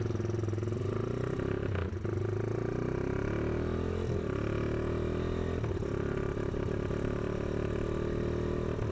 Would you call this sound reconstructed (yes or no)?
no